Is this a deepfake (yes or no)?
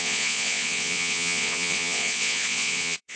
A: yes